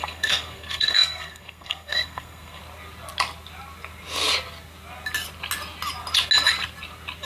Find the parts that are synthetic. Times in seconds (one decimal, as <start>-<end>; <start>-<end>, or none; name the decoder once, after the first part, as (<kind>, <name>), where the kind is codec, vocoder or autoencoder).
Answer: 0.0-2.6 (codec, SNAC)